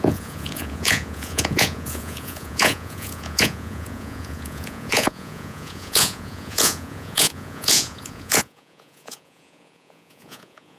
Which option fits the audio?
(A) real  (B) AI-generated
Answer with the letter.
B